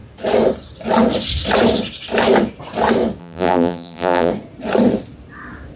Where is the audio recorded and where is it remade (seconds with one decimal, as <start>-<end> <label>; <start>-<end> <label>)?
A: 0.0-3.2 recorded; 3.2-4.3 remade; 4.3-5.8 recorded